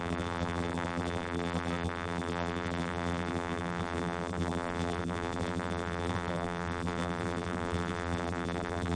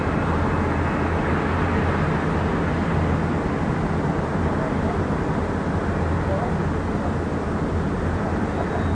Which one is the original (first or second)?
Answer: second